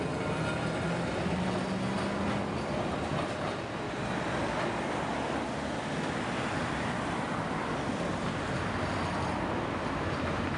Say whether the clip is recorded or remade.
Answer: recorded